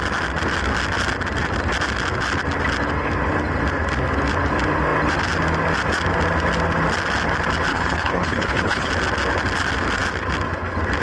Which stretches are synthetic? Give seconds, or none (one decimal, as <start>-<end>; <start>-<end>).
7.7-8.9